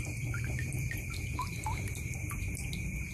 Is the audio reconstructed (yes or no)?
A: yes